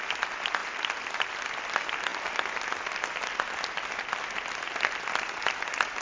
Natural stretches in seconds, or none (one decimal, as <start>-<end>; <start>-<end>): 0.0-6.0